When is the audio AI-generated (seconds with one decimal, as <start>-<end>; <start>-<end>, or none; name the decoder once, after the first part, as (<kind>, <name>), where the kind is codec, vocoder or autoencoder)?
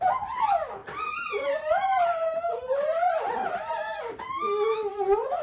0.8-4.0 (vocoder, BigVGAN v2)